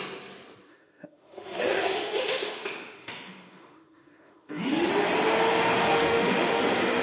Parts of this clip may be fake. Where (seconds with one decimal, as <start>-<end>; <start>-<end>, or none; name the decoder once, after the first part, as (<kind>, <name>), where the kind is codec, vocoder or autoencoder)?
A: 0.7-4.9 (autoencoder, DAC-VAE); 5.8-6.6